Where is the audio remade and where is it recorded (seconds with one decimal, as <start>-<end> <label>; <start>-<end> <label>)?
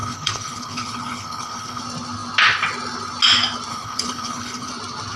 0.0-1.8 remade; 1.8-3.7 recorded; 3.7-4.7 remade; 4.7-5.2 recorded